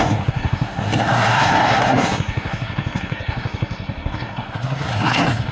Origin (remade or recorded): remade